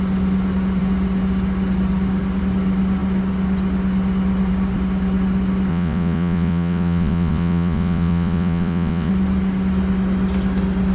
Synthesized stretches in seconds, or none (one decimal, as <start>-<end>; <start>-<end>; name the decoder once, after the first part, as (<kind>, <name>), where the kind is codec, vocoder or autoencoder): 5.7-9.1 (vocoder, Vocos)